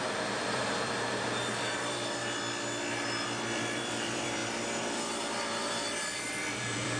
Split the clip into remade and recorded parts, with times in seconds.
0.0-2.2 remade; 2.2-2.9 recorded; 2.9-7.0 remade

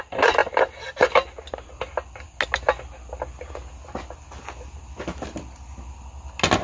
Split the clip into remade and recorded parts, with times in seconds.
0.0-6.6 recorded

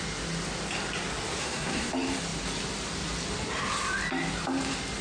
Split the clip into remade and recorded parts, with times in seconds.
0.0-1.4 recorded; 1.4-1.9 remade; 1.9-5.0 recorded

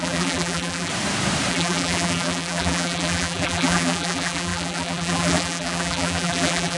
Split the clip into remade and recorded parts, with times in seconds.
0.0-0.9 remade; 0.9-1.5 recorded; 1.5-6.8 remade

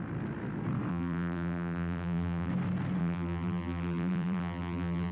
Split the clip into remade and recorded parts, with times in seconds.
0.0-0.9 recorded; 0.9-2.5 remade; 2.5-3.0 recorded; 3.0-5.1 remade

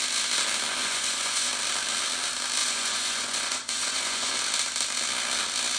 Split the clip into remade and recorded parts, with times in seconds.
0.0-0.7 recorded; 0.7-1.5 remade; 1.5-2.6 recorded; 2.6-4.3 remade; 4.3-5.8 recorded

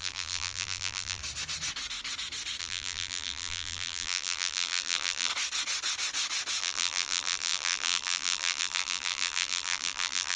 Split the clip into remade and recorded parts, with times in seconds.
0.0-1.2 remade; 1.2-2.6 recorded; 2.6-5.3 remade; 5.3-6.6 recorded; 6.6-10.4 remade

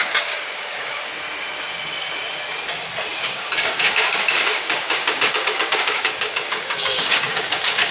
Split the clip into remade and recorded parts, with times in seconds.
0.0-1.1 remade; 1.1-3.2 recorded; 3.2-7.9 remade